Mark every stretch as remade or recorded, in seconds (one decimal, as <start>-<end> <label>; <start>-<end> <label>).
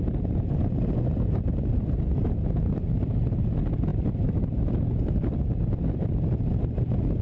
0.0-7.2 recorded